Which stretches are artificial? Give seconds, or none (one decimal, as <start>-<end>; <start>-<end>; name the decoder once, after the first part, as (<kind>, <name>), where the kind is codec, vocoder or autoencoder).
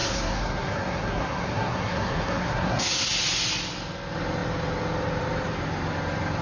0.0-3.1 (codec, SNAC)